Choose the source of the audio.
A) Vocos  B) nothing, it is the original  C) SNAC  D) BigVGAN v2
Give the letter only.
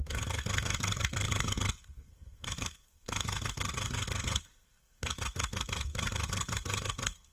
C